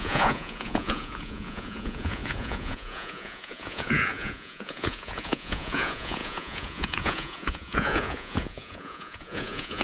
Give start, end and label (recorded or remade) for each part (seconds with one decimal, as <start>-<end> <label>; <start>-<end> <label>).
0.0-9.8 remade